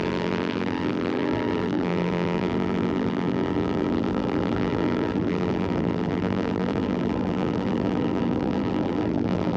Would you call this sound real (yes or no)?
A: no